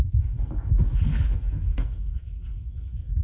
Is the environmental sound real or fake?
fake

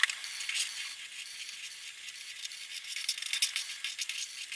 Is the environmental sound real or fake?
real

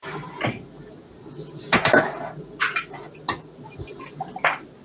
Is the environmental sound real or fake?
real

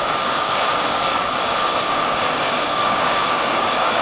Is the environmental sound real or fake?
fake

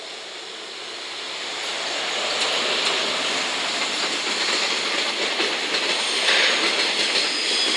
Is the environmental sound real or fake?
real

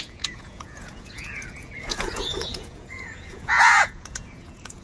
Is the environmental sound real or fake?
fake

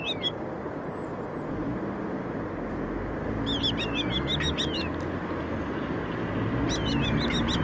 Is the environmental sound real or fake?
real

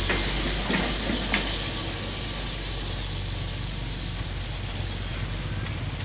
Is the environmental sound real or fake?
real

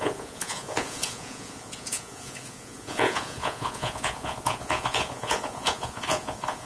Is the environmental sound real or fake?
fake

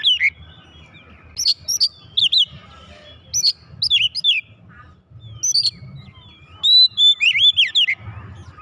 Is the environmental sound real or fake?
real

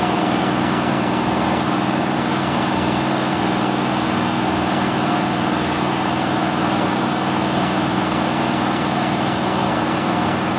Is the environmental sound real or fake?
fake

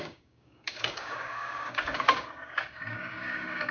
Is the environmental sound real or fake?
fake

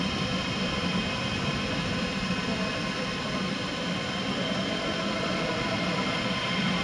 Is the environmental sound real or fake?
fake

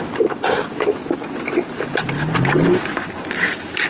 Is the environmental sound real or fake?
real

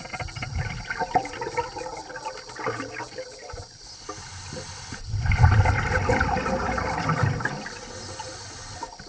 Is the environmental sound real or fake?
real